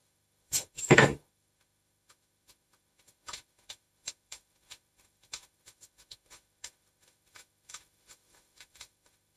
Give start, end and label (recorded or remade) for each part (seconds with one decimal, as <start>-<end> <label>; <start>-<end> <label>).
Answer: 0.0-9.4 remade